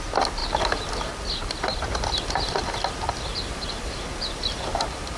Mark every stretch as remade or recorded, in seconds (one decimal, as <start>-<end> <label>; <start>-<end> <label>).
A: 0.0-3.3 recorded; 3.3-3.8 remade; 3.8-5.2 recorded